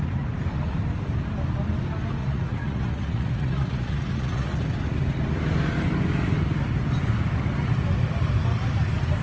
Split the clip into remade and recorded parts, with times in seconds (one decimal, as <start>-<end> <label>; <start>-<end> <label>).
0.0-2.2 recorded; 2.2-4.6 remade; 4.6-9.2 recorded